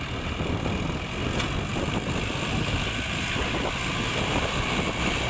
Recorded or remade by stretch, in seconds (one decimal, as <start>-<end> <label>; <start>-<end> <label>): 0.0-1.7 recorded; 1.7-5.3 remade